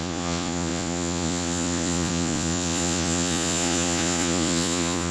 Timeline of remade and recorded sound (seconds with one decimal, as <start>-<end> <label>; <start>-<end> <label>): 0.0-5.1 remade